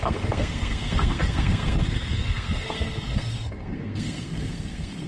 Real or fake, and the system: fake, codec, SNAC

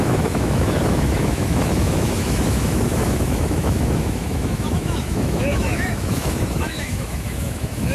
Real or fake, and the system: fake, autoencoder, DAC-VAE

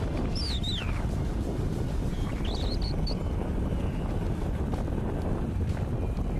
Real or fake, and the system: real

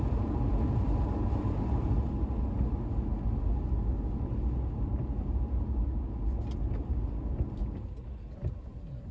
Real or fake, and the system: real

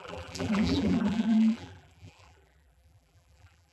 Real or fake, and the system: fake, vocoder, BigVGAN v2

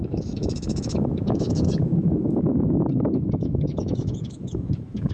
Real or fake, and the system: fake, autoencoder, DAC-VAE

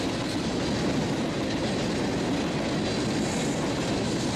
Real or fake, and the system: real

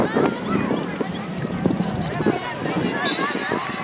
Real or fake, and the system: real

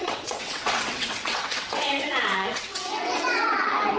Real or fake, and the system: fake, vocoder, WaveNeXt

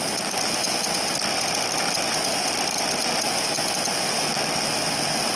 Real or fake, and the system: real